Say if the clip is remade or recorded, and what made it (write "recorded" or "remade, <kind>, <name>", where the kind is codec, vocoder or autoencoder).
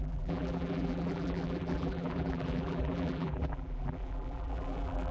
remade, vocoder, BigVGAN v2